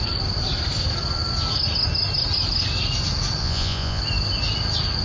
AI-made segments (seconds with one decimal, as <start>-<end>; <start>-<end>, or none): 3.4-4.0